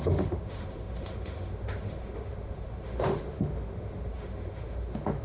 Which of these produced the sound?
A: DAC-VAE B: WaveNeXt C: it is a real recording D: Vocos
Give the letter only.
A